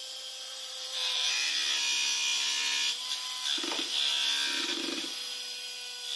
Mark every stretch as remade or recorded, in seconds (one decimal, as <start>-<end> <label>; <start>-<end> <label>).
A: 0.0-0.5 recorded; 0.5-1.5 remade; 1.5-6.2 recorded